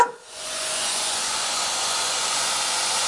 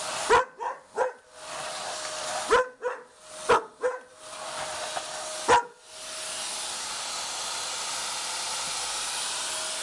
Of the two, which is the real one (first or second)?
second